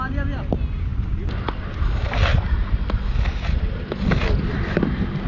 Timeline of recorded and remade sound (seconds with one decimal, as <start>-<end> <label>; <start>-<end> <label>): 0.0-5.3 recorded